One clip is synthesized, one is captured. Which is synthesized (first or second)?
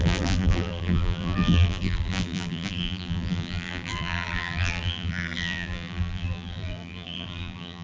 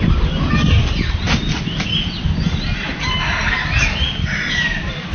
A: first